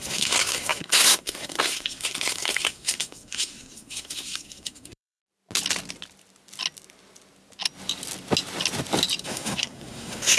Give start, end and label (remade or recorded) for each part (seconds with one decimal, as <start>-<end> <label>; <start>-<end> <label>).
0.0-5.2 remade; 5.2-9.2 recorded; 9.2-10.4 remade